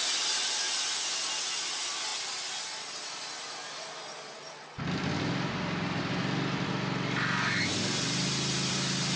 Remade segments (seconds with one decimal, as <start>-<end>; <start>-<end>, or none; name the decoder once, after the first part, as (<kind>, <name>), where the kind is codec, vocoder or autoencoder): none